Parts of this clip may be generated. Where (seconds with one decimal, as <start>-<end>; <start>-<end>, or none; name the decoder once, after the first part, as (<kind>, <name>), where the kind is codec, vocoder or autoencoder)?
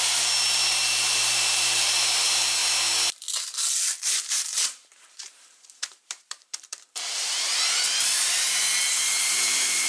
0.0-2.6 (vocoder, BigVGAN v2); 4.0-8.6; 9.2-9.9